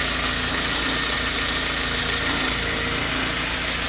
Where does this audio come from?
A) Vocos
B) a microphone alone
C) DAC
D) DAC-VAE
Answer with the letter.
B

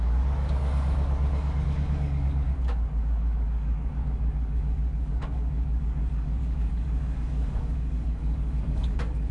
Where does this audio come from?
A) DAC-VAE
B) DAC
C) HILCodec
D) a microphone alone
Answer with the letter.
B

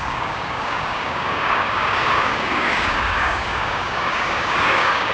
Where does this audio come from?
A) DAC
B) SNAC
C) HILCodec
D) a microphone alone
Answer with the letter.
A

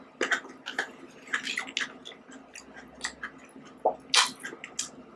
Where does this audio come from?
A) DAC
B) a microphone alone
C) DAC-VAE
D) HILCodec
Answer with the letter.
B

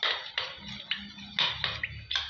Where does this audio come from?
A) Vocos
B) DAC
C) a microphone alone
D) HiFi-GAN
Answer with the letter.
C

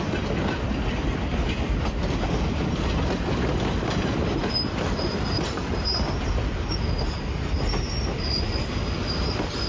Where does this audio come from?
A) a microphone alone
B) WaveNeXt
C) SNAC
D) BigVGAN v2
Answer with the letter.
A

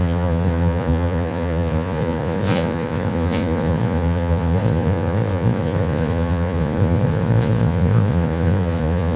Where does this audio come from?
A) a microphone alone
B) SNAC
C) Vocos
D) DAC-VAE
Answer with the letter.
C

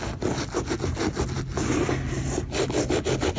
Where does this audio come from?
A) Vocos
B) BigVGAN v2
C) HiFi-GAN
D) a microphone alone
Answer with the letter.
D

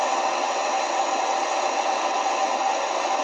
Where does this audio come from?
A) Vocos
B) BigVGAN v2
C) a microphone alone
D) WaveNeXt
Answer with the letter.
D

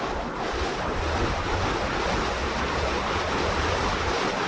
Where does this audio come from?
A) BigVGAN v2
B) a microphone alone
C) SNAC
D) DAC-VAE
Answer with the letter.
B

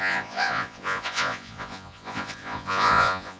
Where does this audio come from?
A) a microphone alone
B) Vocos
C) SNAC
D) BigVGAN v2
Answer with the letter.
B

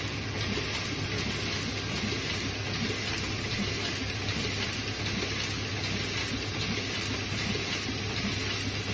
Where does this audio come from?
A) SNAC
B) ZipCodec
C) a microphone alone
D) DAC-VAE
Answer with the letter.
C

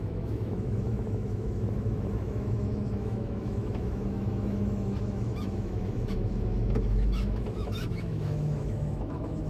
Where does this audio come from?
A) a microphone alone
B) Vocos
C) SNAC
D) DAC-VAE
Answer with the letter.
D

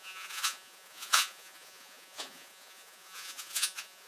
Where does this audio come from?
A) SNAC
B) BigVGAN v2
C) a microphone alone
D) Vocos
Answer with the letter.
D